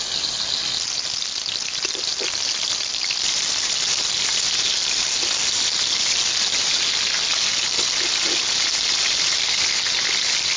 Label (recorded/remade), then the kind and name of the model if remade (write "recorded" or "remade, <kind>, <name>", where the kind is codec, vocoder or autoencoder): recorded